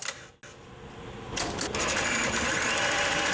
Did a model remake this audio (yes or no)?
no